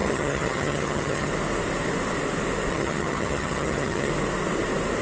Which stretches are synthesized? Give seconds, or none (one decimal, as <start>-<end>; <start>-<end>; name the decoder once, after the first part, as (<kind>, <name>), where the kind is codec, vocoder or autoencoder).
0.0-1.3 (vocoder, HiFi-GAN); 2.7-4.1